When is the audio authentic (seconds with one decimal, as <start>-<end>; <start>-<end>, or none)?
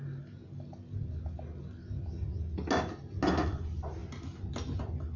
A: 0.0-5.2